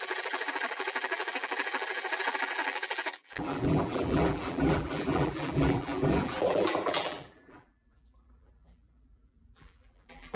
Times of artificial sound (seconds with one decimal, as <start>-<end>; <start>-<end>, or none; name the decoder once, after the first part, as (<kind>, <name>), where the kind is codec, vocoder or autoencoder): 0.0-10.4 (vocoder, BigVGAN v2)